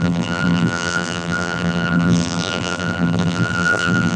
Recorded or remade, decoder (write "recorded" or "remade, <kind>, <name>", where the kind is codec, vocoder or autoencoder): remade, vocoder, BigVGAN v2